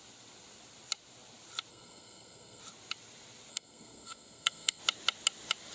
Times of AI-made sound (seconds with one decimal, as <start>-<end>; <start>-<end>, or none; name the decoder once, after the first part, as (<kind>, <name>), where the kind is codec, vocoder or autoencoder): 1.7-2.6 (codec, SNAC); 3.5-4.8